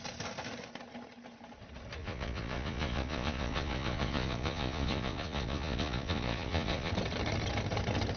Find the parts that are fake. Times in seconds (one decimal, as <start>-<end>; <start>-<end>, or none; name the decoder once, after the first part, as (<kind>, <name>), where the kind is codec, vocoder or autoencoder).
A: 2.0-6.9 (vocoder, Vocos)